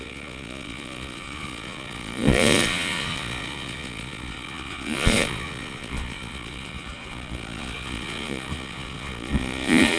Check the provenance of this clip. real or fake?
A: fake